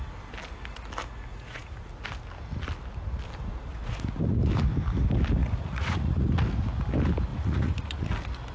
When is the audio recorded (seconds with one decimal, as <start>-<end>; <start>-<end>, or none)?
0.0-1.3; 1.9-3.7; 4.5-5.4; 6.3-7.3; 8.1-8.5